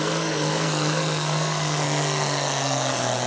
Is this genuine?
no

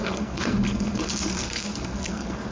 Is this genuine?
no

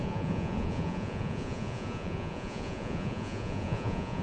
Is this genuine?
no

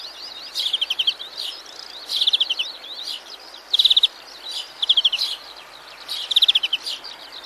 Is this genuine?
no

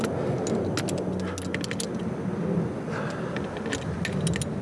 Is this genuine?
yes